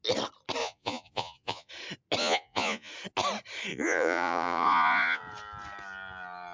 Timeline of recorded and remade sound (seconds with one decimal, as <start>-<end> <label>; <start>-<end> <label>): 0.0-0.6 recorded; 0.6-1.7 remade; 1.7-2.2 recorded; 2.2-2.9 remade; 2.9-3.7 recorded; 3.7-5.2 remade; 5.2-6.5 recorded